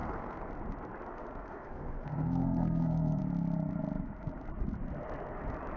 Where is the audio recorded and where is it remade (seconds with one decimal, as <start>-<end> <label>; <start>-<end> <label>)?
0.0-0.5 remade; 0.5-1.1 recorded; 1.1-3.2 remade; 3.2-5.8 recorded